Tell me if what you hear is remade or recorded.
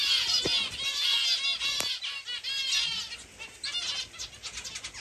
recorded